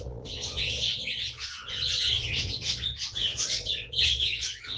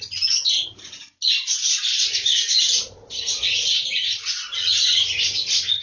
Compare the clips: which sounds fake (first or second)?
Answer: first